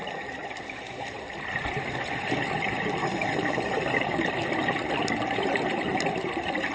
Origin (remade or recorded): remade